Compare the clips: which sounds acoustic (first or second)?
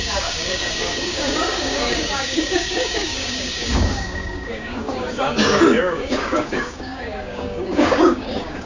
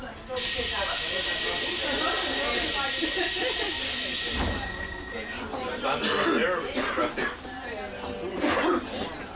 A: second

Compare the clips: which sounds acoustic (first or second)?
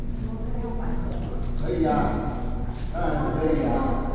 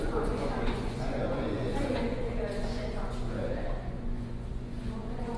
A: first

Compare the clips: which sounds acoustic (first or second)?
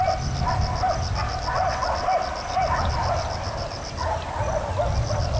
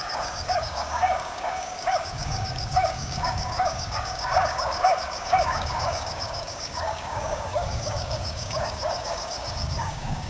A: first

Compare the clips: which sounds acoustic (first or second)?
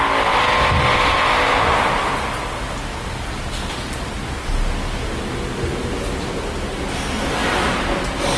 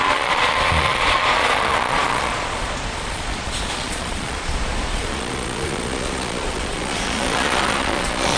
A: first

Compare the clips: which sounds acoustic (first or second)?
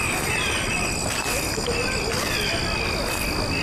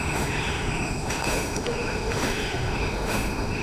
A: first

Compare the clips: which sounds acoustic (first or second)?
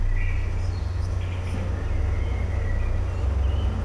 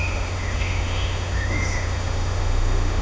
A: first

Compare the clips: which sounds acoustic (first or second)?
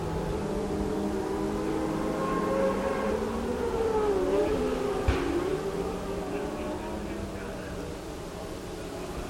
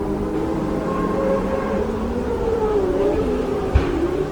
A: first